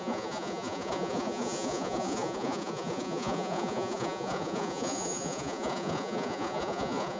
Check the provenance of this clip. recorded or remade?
remade